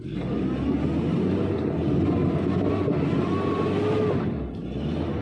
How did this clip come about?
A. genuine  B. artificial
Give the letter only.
A